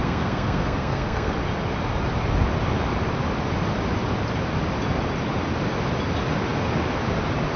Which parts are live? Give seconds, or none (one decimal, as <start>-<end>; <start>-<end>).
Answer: 1.3-7.6